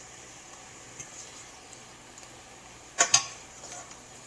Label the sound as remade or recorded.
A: remade